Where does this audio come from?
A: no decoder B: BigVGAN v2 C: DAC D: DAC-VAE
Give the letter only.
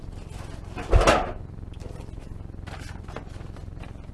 A